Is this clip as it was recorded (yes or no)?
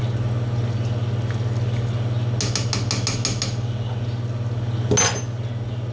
yes